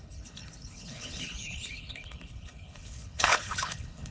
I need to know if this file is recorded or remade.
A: remade